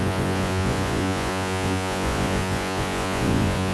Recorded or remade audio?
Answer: remade